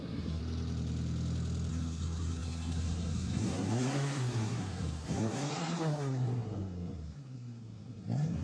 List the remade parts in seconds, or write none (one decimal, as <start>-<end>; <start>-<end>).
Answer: 0.0-0.4; 1.7-8.4